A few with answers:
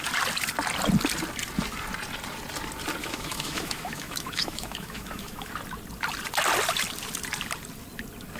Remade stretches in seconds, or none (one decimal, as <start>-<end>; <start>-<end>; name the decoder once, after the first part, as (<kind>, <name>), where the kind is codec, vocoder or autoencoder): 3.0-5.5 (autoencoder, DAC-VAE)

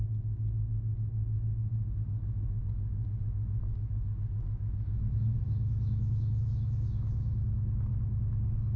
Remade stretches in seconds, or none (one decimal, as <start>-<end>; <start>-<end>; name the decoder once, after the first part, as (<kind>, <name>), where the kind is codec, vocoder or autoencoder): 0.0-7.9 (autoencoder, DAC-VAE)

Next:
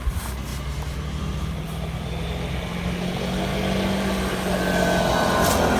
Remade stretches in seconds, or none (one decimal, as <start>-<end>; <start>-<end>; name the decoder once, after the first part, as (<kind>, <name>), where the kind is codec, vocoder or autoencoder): none

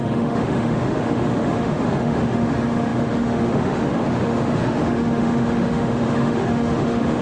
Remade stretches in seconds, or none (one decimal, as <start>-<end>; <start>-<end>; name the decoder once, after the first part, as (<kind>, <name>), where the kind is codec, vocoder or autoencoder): 0.0-7.2 (autoencoder, DAC-VAE)